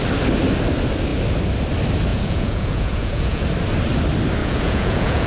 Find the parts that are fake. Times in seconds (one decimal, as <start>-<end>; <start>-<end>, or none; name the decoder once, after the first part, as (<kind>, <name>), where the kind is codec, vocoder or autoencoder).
2.1-3.4 (vocoder, Vocos); 4.4-5.3